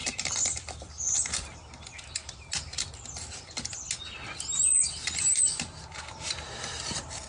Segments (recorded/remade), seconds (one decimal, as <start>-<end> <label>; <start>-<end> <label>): 0.0-1.6 remade; 1.6-7.3 recorded